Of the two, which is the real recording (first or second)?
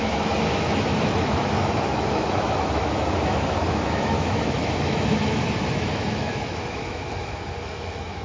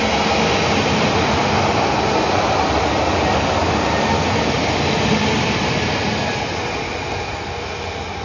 second